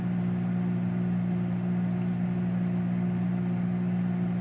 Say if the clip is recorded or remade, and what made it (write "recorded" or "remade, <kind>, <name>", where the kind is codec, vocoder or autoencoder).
recorded